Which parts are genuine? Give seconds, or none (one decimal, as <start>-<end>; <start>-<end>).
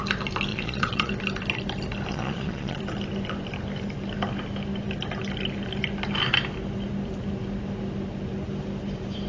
0.0-0.5; 1.1-2.1; 2.8-9.3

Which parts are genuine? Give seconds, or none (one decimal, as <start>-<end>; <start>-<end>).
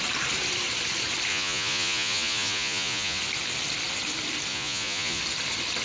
0.0-1.3; 3.2-4.5; 5.2-5.8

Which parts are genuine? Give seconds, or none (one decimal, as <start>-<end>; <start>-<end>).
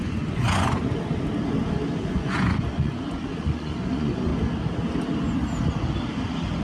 0.9-2.0; 4.3-6.6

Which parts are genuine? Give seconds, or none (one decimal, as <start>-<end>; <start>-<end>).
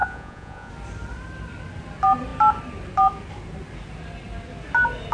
0.7-5.1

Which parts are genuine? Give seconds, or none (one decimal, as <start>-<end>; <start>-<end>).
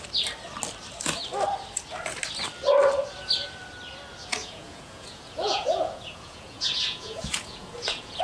0.0-4.4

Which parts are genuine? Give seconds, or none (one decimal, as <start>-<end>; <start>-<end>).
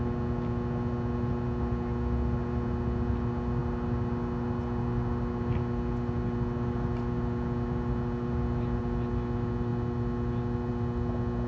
0.0-11.5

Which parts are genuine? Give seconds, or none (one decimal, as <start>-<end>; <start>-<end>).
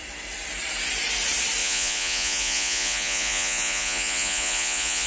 0.0-1.6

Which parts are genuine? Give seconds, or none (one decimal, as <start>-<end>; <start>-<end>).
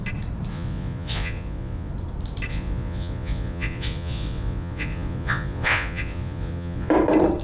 0.0-0.5; 1.9-2.5; 6.9-7.4